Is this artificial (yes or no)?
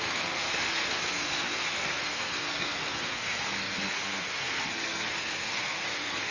yes